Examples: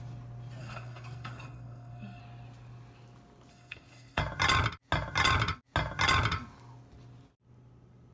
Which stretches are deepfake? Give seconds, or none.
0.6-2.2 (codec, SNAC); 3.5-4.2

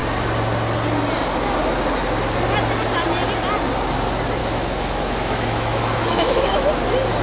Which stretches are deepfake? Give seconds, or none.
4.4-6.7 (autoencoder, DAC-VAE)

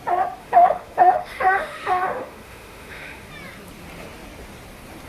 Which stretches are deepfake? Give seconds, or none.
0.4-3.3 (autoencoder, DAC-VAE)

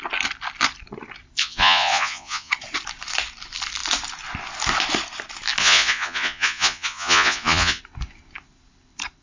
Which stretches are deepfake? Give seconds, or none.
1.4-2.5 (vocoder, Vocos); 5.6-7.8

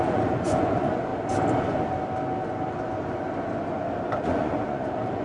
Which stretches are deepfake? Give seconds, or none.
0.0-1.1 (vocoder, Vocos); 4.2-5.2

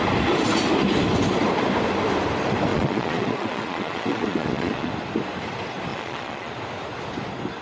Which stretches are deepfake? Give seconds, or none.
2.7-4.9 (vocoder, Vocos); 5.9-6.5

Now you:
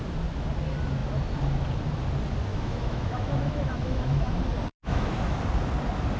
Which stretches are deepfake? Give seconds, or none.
2.5-4.3 (autoencoder, DAC-VAE); 4.7-5.4

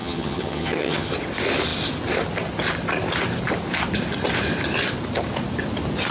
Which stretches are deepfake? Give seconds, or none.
0.0-1.1 (vocoder, HiFi-GAN)